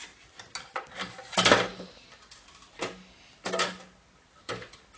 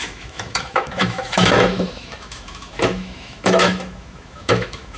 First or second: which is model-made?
second